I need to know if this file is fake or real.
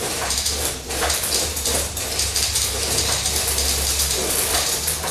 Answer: fake